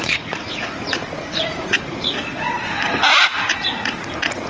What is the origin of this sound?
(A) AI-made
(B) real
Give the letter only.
A